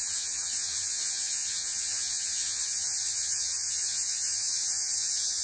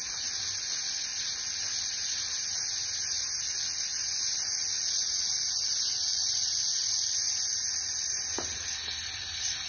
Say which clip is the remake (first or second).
first